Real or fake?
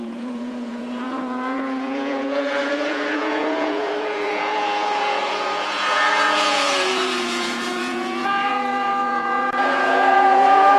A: fake